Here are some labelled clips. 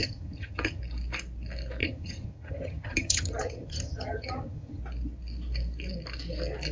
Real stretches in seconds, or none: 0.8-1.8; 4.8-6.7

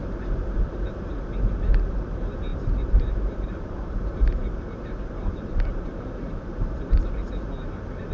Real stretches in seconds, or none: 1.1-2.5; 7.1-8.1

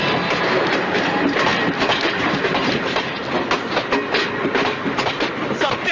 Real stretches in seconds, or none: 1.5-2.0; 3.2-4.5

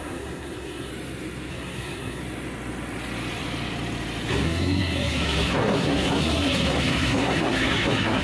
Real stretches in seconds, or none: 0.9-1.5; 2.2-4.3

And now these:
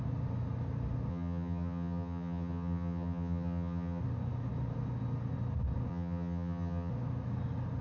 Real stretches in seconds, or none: 0.0-1.1; 4.0-5.9; 6.9-7.8

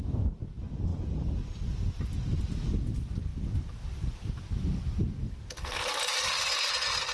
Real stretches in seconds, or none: 0.0-5.2; 6.0-7.1